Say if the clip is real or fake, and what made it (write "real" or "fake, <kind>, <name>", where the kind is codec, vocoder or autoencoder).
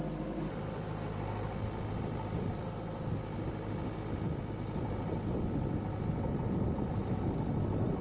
real